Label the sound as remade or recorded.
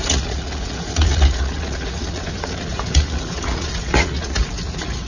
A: remade